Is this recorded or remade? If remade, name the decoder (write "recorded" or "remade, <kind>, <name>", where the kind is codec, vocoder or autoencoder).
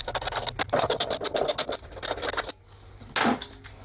recorded